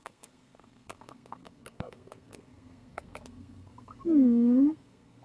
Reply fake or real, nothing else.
fake